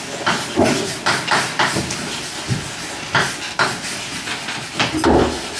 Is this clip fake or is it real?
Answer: real